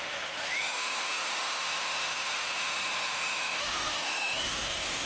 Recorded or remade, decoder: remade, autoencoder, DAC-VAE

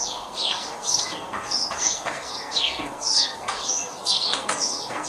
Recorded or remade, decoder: remade, codec, SNAC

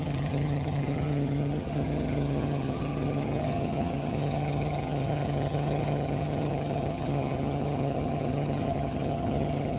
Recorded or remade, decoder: remade, vocoder, HiFi-GAN